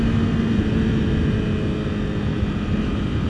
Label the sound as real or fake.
real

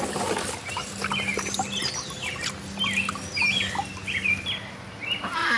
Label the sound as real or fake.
real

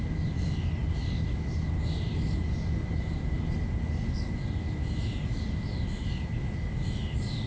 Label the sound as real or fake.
real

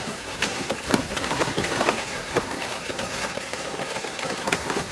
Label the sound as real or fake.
fake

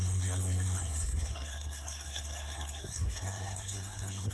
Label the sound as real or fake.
fake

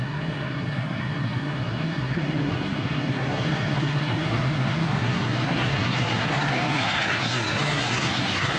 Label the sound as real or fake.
fake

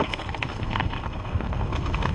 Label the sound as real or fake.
fake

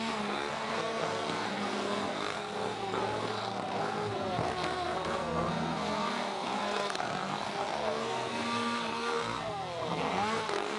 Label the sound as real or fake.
fake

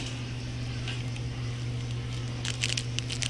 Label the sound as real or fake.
real